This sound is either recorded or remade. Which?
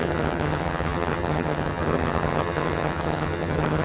remade